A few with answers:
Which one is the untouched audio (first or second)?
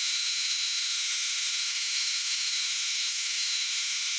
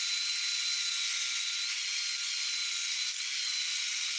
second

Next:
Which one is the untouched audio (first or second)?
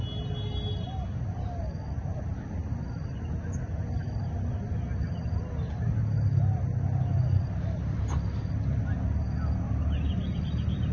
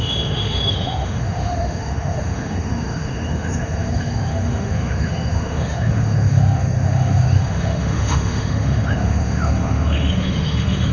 first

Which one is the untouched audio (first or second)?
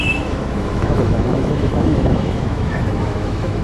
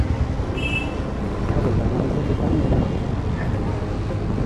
second